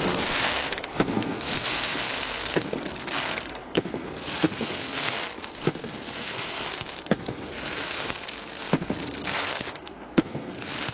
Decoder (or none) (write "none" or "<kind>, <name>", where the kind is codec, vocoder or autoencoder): codec, SNAC